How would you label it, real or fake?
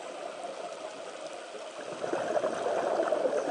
real